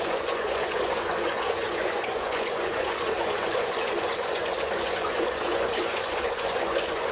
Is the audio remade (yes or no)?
yes